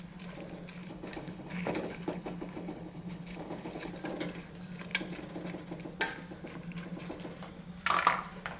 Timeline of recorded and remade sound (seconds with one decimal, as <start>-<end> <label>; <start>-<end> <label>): 0.0-0.8 recorded; 0.8-3.9 remade; 3.9-8.6 recorded